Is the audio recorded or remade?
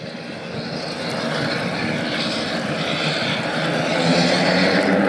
recorded